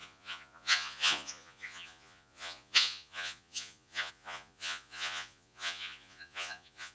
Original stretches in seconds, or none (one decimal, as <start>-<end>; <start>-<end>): none